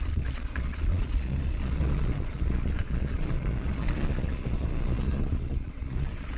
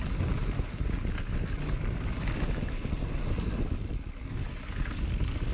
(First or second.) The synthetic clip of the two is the first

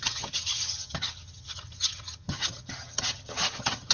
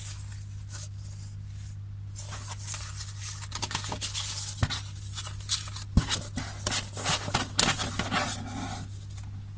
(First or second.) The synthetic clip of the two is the first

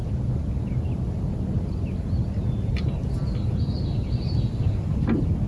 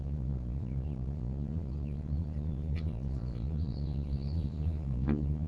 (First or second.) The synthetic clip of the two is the second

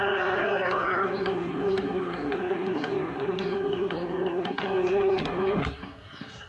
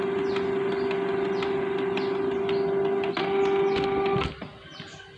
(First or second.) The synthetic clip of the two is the first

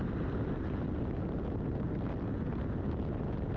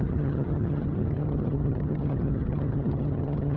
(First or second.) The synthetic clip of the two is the second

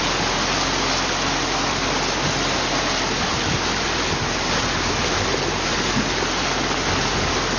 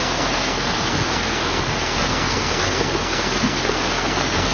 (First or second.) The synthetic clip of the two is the second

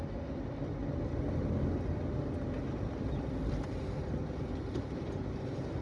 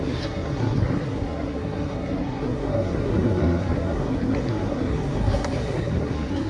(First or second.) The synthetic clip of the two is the second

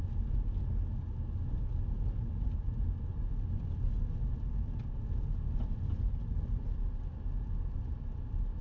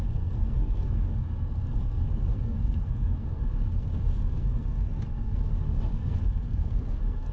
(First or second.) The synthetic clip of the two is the second